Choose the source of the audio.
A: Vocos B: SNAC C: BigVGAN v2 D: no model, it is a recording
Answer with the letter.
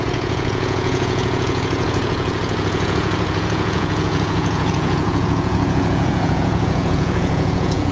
A